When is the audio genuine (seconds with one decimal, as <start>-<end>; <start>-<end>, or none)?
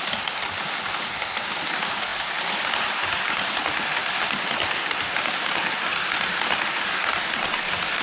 0.0-8.0